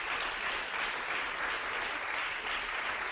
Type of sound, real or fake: real